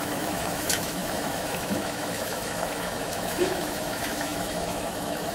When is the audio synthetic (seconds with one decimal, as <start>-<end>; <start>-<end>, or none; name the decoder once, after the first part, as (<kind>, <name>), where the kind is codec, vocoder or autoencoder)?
0.0-5.3 (autoencoder, DAC-VAE)